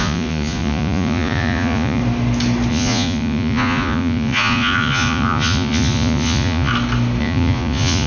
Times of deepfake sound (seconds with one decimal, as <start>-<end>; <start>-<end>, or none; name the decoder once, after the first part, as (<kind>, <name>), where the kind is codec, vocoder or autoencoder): 0.0-2.0 (vocoder, Vocos); 2.7-6.7; 7.2-8.1